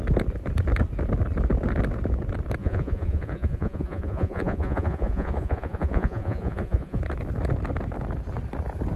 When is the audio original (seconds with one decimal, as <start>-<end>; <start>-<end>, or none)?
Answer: 0.0-2.6; 7.0-9.0